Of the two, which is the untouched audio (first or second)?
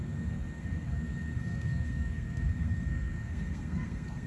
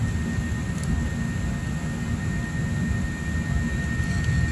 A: second